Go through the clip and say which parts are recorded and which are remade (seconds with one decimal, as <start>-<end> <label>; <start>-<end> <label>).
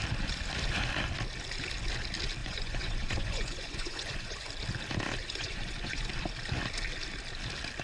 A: 0.0-2.4 recorded; 2.4-4.5 remade; 4.5-5.2 recorded; 5.2-6.1 remade; 6.1-7.8 recorded